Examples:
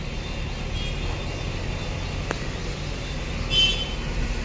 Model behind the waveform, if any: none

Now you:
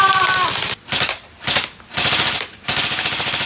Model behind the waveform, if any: none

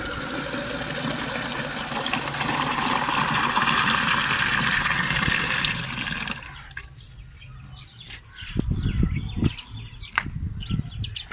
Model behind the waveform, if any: none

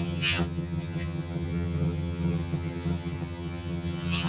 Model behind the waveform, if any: vocoder, HiFi-GAN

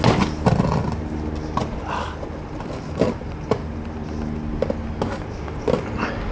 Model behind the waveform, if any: none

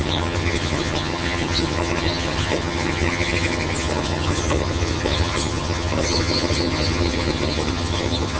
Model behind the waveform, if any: vocoder, HiFi-GAN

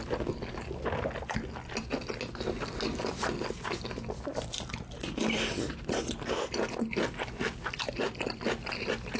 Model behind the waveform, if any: none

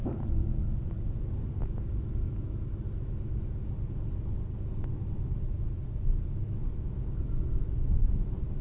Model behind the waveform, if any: none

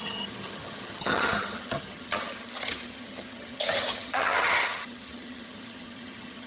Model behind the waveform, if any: vocoder, HiFi-GAN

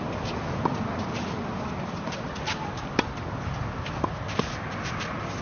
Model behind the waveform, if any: none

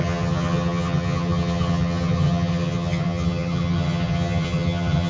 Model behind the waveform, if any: vocoder, HiFi-GAN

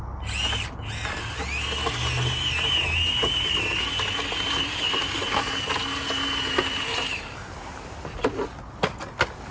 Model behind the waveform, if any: none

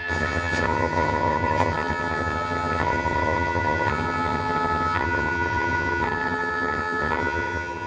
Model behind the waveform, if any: vocoder, HiFi-GAN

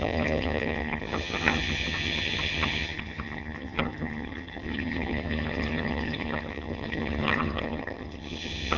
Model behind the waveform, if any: vocoder, HiFi-GAN